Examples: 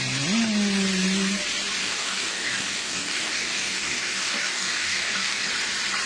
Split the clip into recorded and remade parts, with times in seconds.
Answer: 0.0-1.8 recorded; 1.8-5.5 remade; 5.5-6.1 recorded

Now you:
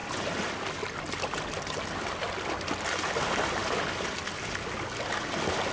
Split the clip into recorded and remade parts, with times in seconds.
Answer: 0.0-5.7 recorded

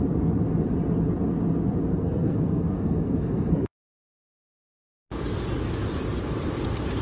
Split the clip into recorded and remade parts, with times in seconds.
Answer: 0.0-1.9 recorded; 1.9-4.2 remade; 4.2-7.0 recorded

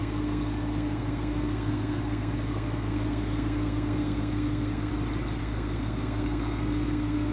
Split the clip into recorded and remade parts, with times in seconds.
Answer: 0.0-4.9 remade; 4.9-5.4 recorded; 5.4-7.3 remade